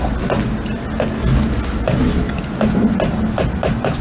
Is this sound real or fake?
real